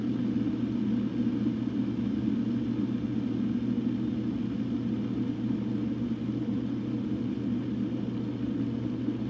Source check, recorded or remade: recorded